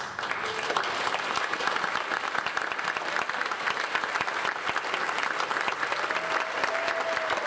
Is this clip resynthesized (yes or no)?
no